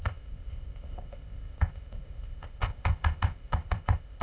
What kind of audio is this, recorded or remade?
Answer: remade